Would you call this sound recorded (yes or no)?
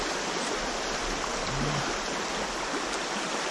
yes